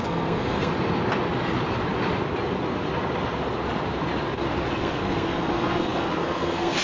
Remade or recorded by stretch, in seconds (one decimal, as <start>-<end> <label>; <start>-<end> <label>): 0.0-0.7 remade; 0.7-4.8 recorded; 4.8-6.8 remade